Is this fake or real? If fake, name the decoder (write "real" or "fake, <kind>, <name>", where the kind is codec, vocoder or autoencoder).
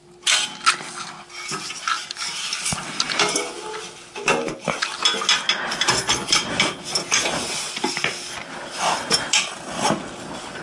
real